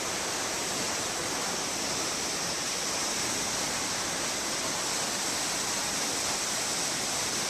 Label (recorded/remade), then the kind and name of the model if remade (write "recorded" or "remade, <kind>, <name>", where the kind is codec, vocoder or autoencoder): recorded